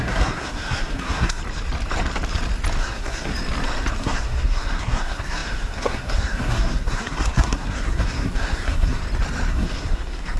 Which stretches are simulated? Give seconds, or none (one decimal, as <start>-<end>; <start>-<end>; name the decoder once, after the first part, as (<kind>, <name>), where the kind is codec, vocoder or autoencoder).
0.0-1.4 (codec, SNAC); 2.8-3.3; 4.0-9.0; 9.5-10.4